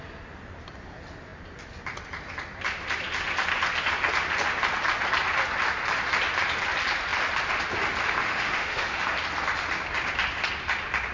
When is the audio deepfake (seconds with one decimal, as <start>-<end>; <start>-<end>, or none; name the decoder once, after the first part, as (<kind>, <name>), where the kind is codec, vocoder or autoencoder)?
8.2-9.0 (autoencoder, DAC-VAE)